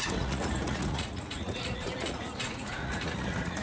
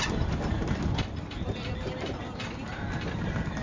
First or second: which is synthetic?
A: first